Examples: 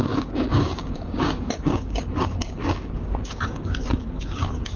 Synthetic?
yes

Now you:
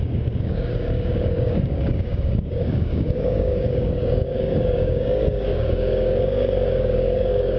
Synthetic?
yes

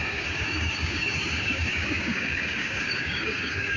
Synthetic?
yes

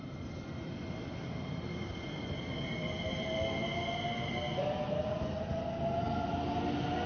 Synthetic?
no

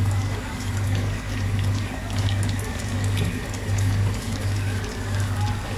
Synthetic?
yes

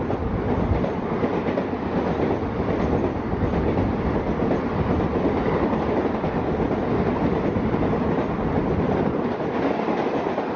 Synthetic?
no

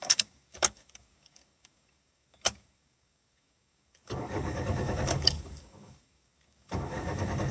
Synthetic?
yes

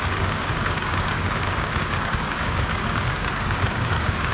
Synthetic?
yes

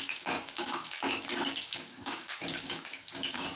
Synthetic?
yes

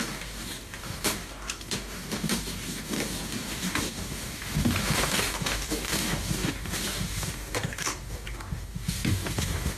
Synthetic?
yes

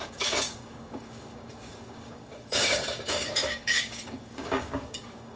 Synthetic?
yes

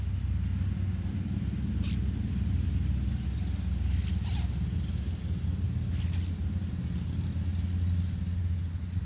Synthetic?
no